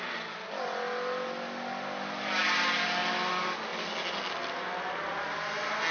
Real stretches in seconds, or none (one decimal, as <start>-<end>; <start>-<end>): 0.0-5.9